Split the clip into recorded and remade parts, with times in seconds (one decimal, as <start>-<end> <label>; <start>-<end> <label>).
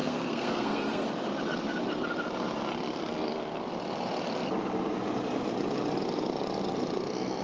0.0-1.1 remade; 1.1-7.4 recorded